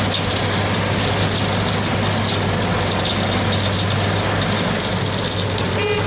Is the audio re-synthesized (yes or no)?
no